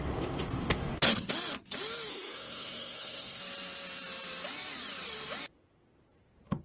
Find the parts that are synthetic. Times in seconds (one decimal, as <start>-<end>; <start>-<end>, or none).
0.0-1.3; 2.1-3.4